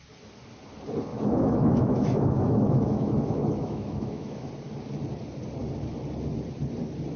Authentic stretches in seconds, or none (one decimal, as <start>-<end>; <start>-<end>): 0.0-1.1; 4.5-7.2